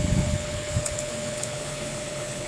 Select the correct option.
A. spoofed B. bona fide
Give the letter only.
A